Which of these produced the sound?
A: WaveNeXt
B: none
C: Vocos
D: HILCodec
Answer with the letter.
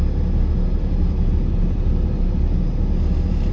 B